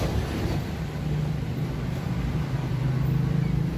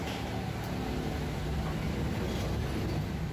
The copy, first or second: first